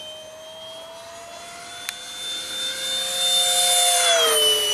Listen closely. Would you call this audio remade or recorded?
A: recorded